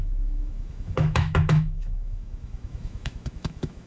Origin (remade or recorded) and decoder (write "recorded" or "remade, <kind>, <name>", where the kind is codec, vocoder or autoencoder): remade, autoencoder, DAC-VAE